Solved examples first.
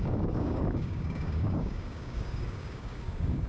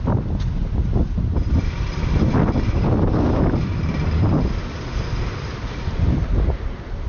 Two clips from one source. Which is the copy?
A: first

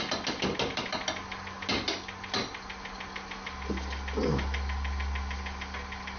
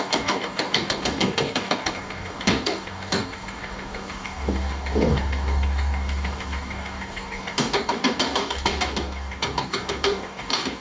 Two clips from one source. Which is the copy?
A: second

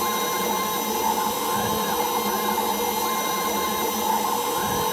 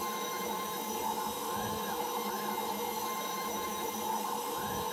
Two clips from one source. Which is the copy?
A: second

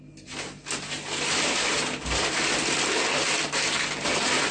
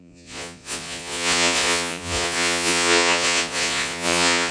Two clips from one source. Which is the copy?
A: second